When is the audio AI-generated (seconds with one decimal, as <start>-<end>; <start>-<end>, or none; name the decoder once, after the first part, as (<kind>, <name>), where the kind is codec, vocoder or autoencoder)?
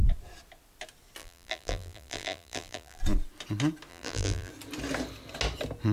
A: 1.2-3.0 (vocoder, BigVGAN v2); 3.9-4.5